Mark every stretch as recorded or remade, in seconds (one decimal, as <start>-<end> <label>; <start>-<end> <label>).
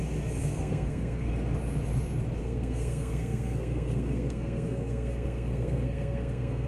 0.0-0.4 recorded; 0.4-1.3 remade; 1.3-2.4 recorded; 2.4-6.7 remade